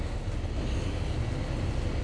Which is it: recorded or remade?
recorded